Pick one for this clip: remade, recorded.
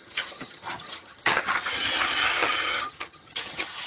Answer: remade